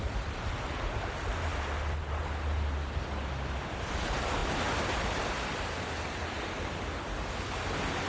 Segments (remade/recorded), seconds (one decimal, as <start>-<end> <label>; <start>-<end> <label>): 0.0-8.1 recorded